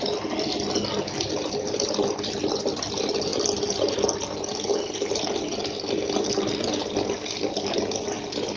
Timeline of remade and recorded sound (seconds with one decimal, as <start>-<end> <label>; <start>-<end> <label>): 0.0-8.6 recorded